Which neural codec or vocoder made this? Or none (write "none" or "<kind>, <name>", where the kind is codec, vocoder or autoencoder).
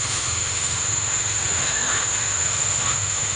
autoencoder, DAC-VAE